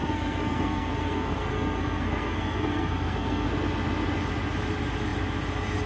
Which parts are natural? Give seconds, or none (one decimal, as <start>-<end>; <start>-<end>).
3.5-5.9